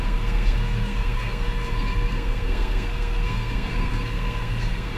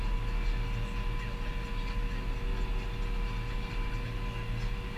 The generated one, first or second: first